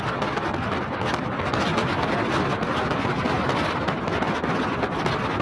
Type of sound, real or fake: real